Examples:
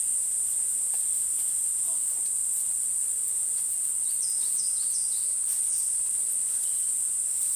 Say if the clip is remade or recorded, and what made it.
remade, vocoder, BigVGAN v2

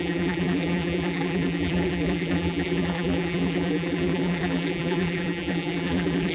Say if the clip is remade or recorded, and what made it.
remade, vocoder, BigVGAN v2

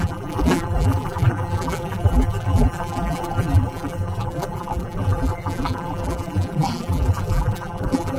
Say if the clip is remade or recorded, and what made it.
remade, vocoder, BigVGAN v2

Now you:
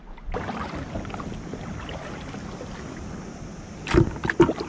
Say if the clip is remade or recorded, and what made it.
recorded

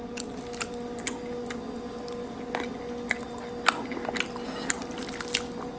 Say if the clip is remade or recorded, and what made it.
recorded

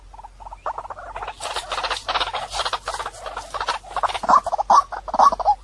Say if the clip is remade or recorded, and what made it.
recorded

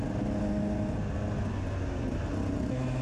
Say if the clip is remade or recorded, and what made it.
recorded